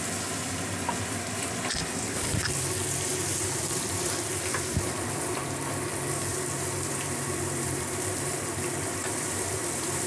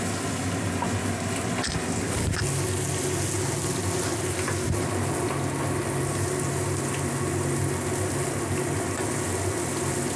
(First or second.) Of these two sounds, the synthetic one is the first